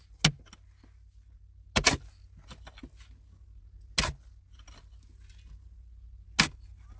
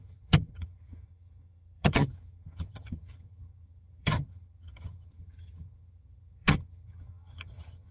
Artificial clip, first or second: second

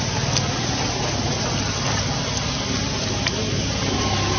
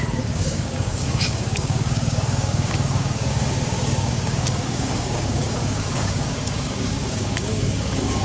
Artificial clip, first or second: second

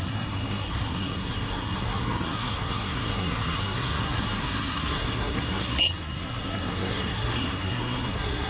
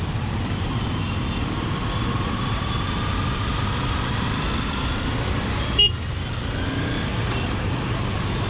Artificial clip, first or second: first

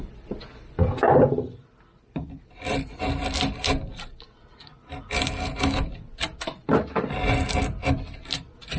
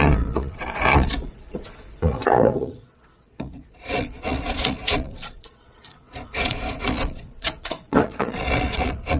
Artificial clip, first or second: second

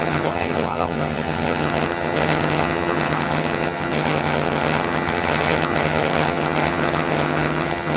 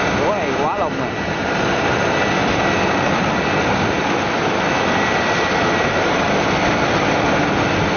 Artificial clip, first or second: first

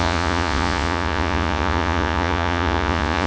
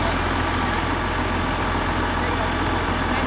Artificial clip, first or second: first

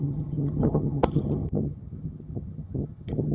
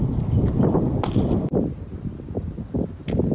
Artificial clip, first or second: first